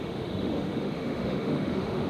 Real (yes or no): no